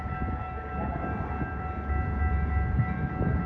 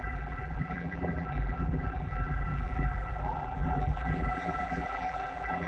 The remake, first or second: second